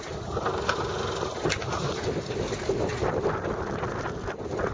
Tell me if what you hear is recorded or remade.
recorded